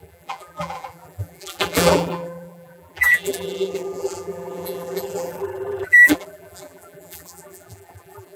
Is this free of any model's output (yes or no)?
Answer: no